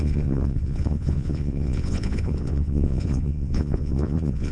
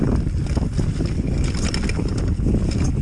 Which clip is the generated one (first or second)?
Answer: first